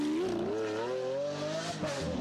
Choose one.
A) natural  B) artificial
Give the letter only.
A